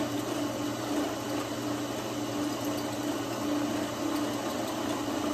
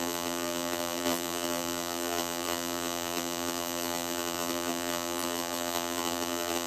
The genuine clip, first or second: first